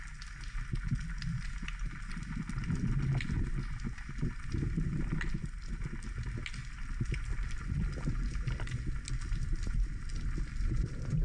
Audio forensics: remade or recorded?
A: recorded